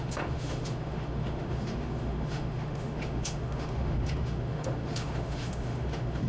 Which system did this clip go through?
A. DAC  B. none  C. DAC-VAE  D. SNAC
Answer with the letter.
C